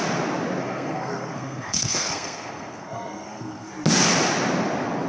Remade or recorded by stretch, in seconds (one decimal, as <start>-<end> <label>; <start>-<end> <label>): 0.0-0.6 recorded; 0.6-3.7 remade; 3.7-5.1 recorded